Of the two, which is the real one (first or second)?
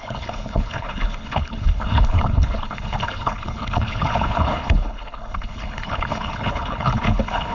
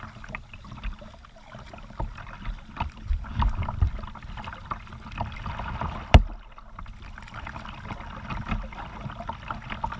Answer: second